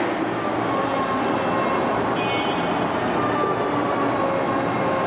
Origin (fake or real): real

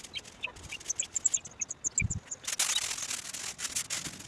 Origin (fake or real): real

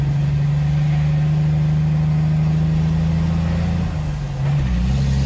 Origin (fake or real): real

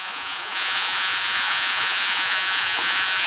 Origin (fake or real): fake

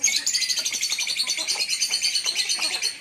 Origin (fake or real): fake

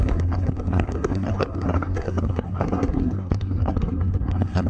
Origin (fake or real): fake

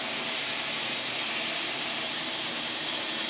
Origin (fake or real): fake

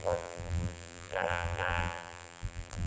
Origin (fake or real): fake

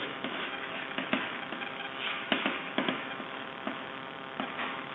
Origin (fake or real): fake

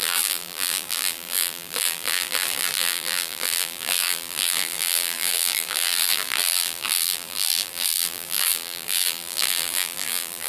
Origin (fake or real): fake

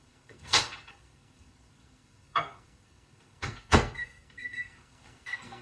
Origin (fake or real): fake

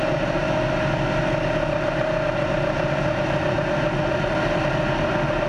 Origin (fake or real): real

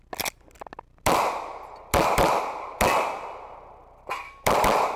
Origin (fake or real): real